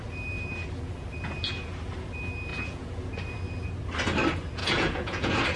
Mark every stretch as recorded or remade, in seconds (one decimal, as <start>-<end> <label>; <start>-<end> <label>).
0.0-2.5 recorded; 2.5-3.1 remade; 3.1-4.6 recorded; 4.6-5.6 remade